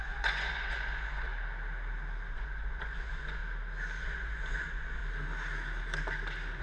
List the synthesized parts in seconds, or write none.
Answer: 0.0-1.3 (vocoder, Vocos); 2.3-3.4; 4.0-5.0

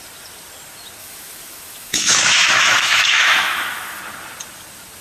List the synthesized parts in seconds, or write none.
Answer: 1.0-4.0 (autoencoder, DAC-VAE)

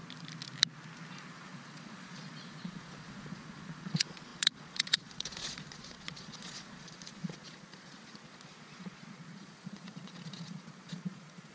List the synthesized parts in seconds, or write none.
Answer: 1.1-11.5 (vocoder, Vocos)